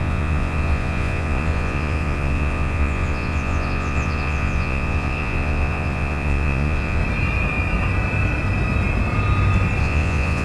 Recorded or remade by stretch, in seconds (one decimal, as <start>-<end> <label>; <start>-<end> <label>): 0.0-7.0 remade; 7.0-9.8 recorded; 9.8-10.4 remade